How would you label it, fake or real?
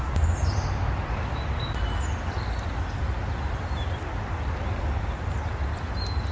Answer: real